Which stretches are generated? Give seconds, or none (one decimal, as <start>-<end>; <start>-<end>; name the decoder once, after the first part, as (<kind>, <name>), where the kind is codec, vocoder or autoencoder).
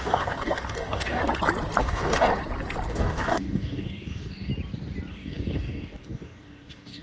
0.0-1.2 (codec, DAC); 1.8-2.3; 2.9-4.5; 5.1-7.0